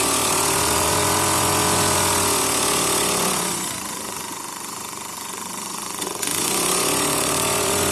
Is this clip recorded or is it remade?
remade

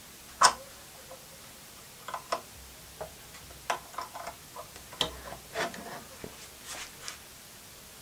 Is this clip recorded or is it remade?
recorded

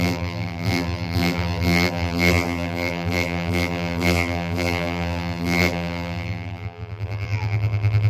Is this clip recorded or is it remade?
remade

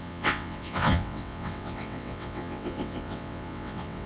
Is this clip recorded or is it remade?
remade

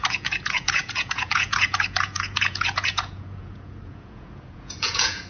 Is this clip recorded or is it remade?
remade